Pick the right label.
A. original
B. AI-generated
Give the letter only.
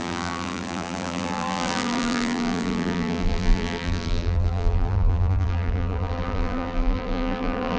B